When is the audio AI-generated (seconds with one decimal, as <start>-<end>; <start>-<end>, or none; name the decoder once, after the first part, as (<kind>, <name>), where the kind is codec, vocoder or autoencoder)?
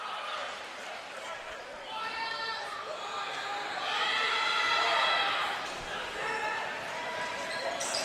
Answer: 0.0-8.0 (vocoder, BigVGAN v2)